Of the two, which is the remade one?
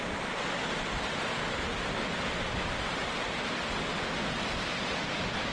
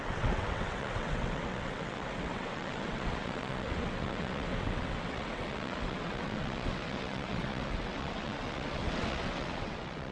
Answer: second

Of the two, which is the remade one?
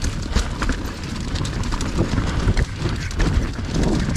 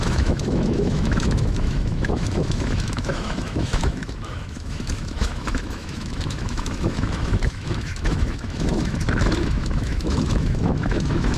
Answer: second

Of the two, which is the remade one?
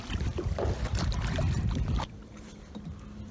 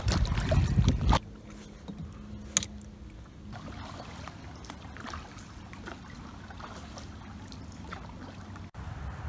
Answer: first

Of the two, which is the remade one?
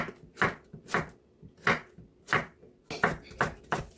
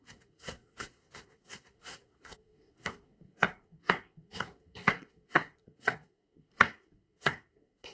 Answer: second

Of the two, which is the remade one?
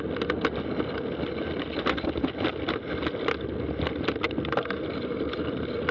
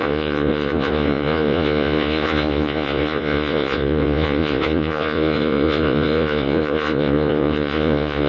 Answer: second